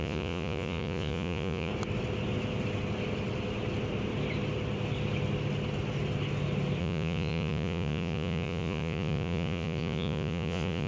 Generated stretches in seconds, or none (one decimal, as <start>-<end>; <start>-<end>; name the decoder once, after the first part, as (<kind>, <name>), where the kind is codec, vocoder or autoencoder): 0.0-1.7 (vocoder, Vocos); 6.8-10.9